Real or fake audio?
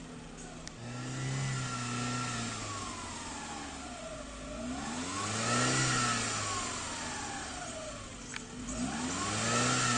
real